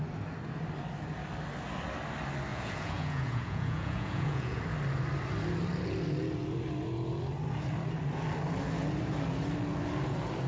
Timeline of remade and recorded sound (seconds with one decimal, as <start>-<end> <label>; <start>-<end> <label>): 0.0-2.5 recorded; 2.5-4.6 remade; 4.6-10.5 recorded